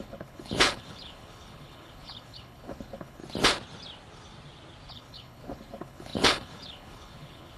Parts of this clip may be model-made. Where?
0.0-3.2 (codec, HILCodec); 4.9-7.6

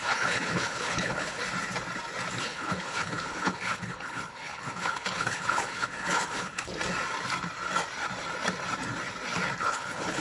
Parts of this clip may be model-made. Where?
0.0-1.4 (codec, HILCodec); 2.4-6.7; 9.6-10.2

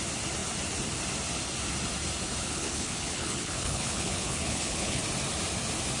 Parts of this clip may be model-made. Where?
2.4-5.0 (codec, HILCodec)

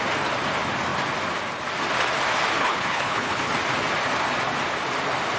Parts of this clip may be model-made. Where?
2.6-3.5 (codec, HILCodec)

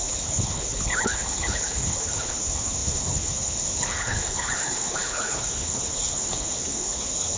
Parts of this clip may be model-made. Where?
0.0-7.4 (codec, HILCodec)

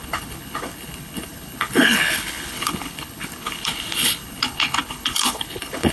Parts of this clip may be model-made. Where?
0.0-5.9 (codec, HILCodec)

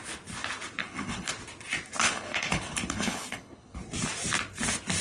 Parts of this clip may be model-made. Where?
0.8-1.3 (codec, HILCodec); 2.0-3.8